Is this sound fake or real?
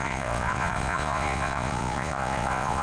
fake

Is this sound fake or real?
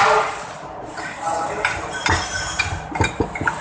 real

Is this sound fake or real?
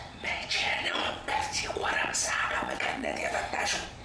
fake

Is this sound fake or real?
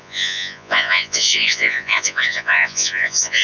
fake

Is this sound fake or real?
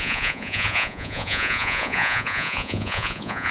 fake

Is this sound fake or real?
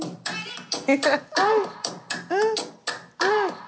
real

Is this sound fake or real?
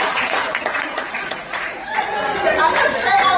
fake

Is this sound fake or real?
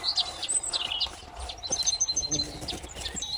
real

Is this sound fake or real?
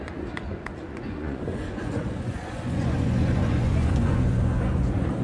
fake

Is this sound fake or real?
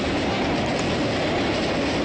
real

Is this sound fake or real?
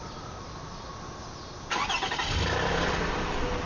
real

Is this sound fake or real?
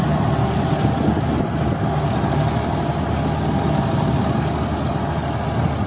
real